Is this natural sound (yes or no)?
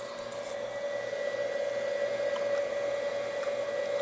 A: yes